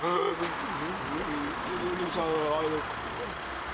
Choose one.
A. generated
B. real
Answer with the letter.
B